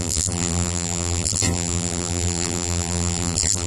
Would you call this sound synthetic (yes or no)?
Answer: yes